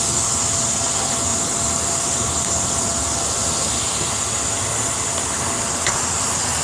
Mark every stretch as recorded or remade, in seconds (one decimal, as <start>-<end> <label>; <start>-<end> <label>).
0.0-1.3 recorded; 1.3-2.7 remade; 2.7-6.6 recorded